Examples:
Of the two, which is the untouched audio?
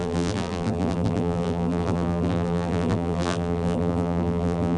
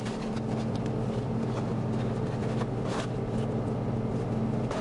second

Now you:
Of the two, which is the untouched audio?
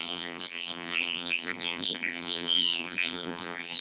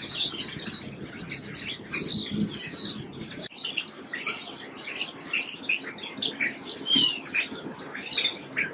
second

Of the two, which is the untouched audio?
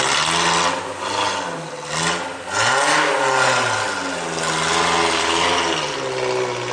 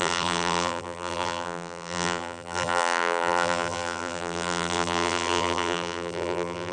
first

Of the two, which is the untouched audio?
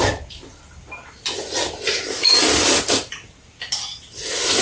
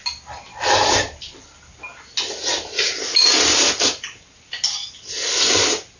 second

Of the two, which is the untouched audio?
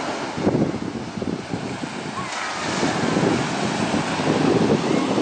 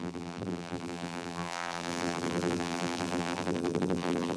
first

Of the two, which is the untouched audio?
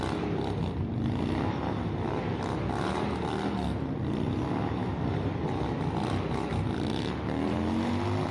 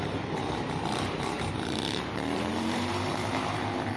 first